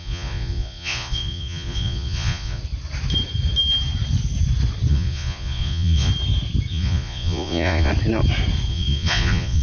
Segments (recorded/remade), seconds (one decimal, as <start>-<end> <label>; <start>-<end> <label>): 0.0-2.6 remade; 2.6-4.9 recorded; 4.9-6.1 remade; 6.1-6.7 recorded; 6.7-7.9 remade; 7.9-8.7 recorded; 8.7-9.6 remade